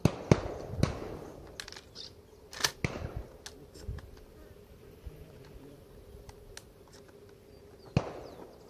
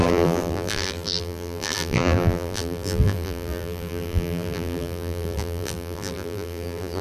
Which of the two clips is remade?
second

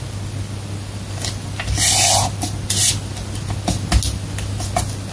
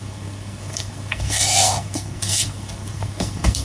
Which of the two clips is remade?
second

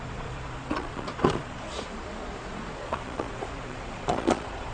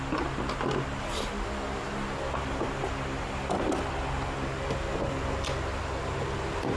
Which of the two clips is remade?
first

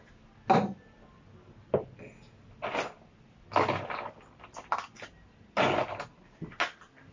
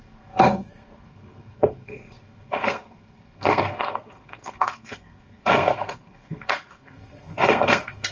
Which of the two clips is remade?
second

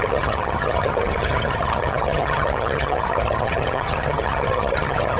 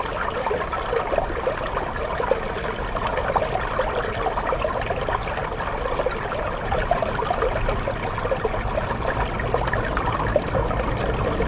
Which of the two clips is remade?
first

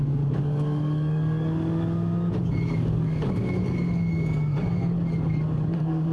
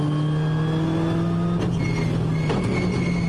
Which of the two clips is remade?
first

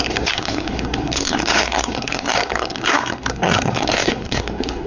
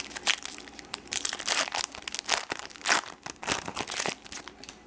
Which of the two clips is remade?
first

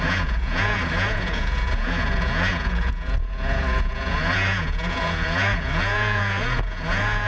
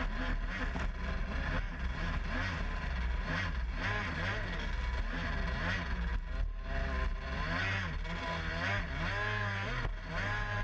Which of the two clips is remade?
first